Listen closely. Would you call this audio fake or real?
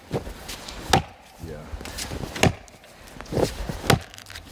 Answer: real